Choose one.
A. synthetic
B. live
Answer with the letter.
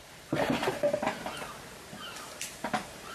A